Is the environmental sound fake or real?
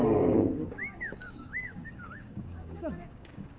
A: fake